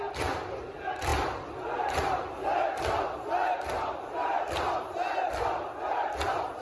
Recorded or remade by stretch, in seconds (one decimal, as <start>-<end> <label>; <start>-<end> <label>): 0.0-6.6 recorded

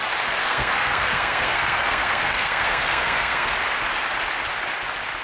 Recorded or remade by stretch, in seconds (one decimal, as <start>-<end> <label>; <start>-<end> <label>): 0.0-0.4 recorded; 0.4-3.5 remade; 3.5-5.2 recorded

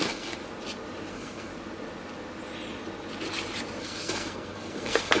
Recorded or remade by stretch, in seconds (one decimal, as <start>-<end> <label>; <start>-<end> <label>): 0.0-0.4 remade; 0.4-1.1 recorded; 1.1-1.5 remade; 1.5-3.8 recorded; 3.8-5.2 remade

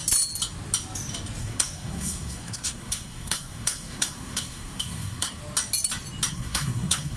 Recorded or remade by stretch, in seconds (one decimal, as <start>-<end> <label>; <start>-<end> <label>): 0.0-1.4 recorded; 1.4-5.4 remade; 5.4-6.3 recorded; 6.3-7.2 remade

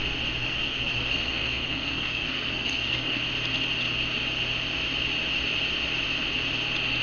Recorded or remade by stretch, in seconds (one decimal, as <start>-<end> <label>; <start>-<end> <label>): 0.0-0.4 recorded; 0.4-3.2 remade; 3.2-7.0 recorded

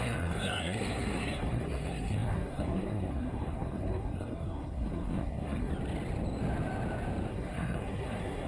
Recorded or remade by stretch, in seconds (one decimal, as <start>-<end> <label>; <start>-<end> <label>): 0.0-5.7 remade; 5.7-7.3 recorded; 7.3-8.5 remade